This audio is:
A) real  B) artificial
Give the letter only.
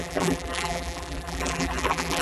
B